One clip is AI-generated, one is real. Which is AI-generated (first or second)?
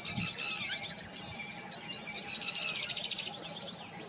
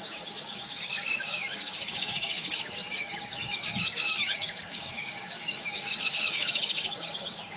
second